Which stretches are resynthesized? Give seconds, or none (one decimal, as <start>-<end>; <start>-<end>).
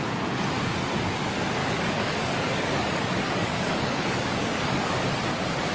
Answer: 1.6-5.0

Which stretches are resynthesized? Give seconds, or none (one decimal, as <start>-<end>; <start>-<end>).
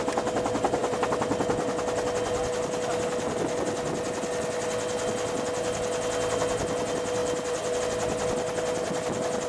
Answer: 7.2-7.8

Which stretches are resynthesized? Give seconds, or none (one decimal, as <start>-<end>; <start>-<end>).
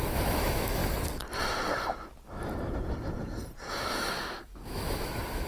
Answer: 0.0-0.8; 4.1-5.5